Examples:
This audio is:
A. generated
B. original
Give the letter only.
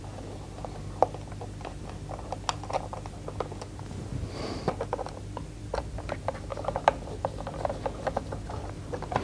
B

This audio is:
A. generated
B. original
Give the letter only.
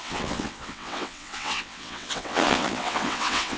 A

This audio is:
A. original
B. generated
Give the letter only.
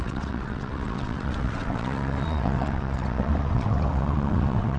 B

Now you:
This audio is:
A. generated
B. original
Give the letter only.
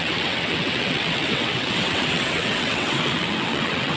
A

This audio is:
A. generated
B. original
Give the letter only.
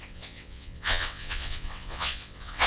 A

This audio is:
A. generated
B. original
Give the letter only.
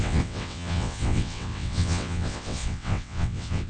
A